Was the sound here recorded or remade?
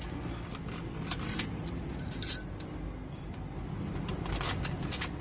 recorded